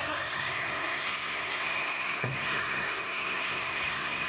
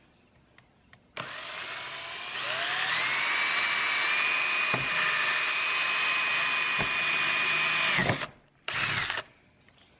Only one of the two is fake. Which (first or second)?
first